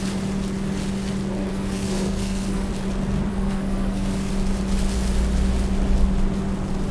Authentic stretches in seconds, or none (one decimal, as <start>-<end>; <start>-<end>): 0.0-1.5; 2.7-3.3; 4.3-6.9